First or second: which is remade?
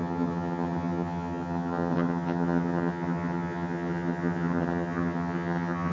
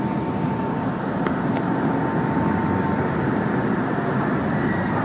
first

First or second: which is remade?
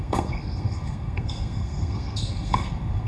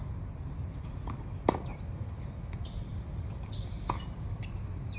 first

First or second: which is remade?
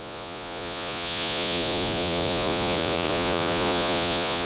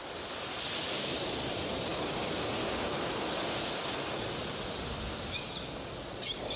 first